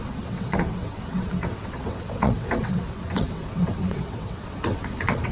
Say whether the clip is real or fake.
fake